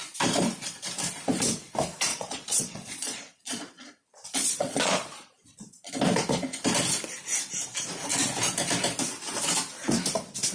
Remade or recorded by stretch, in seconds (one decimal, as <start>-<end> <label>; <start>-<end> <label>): 0.0-2.1 recorded; 2.1-5.9 remade; 5.9-10.5 recorded